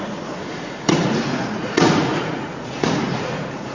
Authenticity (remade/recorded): remade